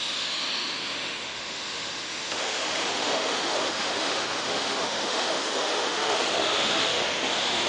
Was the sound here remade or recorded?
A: remade